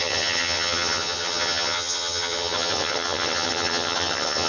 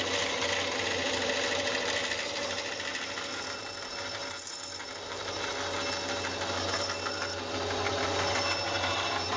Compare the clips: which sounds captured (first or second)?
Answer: second